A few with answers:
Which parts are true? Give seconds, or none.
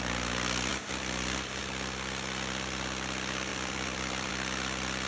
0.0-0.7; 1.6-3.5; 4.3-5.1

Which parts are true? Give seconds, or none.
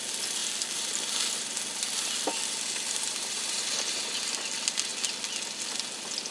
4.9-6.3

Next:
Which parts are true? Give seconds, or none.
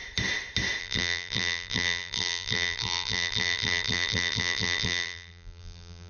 0.0-0.8